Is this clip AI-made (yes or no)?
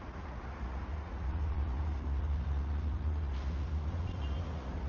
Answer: yes